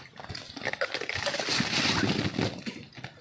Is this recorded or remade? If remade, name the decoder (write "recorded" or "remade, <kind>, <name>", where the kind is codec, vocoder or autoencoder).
recorded